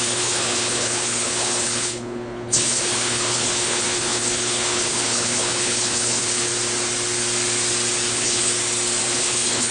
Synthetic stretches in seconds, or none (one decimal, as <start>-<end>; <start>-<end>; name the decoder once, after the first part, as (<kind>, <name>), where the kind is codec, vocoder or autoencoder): 0.0-6.5 (codec, HILCodec); 8.1-8.5; 9.1-9.7